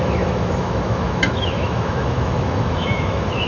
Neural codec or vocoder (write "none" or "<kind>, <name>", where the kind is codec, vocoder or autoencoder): autoencoder, DAC-VAE